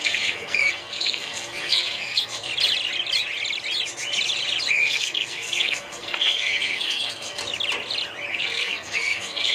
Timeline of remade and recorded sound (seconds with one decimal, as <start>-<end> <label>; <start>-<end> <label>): 0.0-2.5 remade; 2.5-4.7 recorded; 4.7-7.4 remade; 7.4-8.3 recorded; 8.3-9.5 remade